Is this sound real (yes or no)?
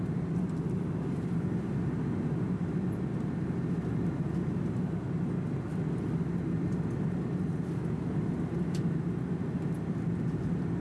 yes